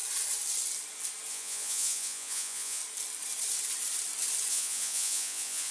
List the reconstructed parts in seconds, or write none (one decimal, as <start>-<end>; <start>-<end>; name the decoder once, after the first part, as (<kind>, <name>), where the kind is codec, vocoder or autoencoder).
1.3-2.8 (vocoder, Vocos); 4.5-5.7